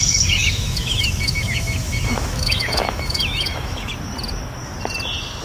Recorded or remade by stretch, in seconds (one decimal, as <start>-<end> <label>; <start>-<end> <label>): 0.0-3.9 remade; 3.9-5.4 recorded